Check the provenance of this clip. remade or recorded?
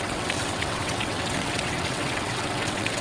remade